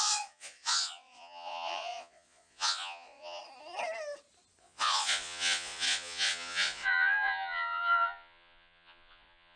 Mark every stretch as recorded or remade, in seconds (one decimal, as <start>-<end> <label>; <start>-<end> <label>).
0.0-3.4 remade; 3.4-4.6 recorded; 4.6-9.6 remade